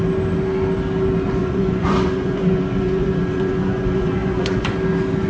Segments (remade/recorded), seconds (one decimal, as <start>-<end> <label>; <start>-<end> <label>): 0.0-1.4 recorded; 1.4-4.6 remade; 4.6-5.3 recorded

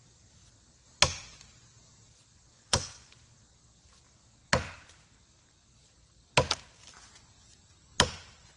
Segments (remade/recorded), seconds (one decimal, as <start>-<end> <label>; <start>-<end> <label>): 0.0-2.5 recorded; 2.5-3.1 remade; 3.1-8.6 recorded

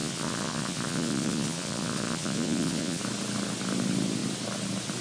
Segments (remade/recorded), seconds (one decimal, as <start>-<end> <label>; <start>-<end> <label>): 0.0-3.0 remade; 3.0-5.0 recorded

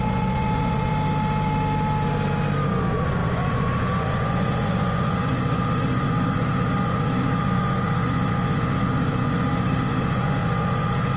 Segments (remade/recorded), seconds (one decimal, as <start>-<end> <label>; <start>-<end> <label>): 0.0-0.9 remade; 0.9-2.7 recorded; 2.7-11.2 remade

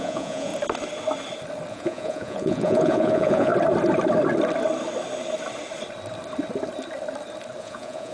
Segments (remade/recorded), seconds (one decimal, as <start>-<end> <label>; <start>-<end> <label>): 0.0-0.5 remade; 0.5-1.7 recorded; 1.7-3.5 remade; 3.5-7.6 recorded; 7.6-8.1 remade

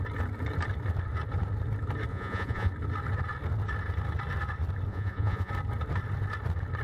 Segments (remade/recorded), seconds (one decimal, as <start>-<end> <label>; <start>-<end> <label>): 0.0-2.1 recorded; 2.1-2.7 remade; 2.7-4.9 recorded; 4.9-5.5 remade; 5.5-6.8 recorded

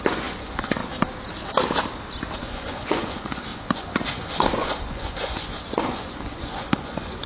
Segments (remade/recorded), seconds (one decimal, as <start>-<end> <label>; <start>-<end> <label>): 0.0-0.8 remade; 0.8-2.4 recorded; 2.4-7.3 remade